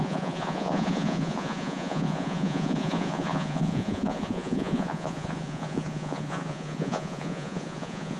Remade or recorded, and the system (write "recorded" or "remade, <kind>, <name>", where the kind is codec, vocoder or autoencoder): remade, vocoder, Vocos